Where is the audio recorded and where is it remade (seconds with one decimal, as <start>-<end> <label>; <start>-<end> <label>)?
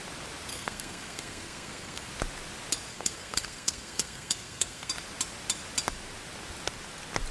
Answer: 0.0-0.5 recorded; 0.5-2.1 remade; 2.1-2.9 recorded; 2.9-4.9 remade; 4.9-7.3 recorded